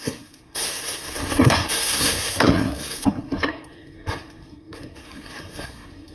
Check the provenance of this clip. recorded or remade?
remade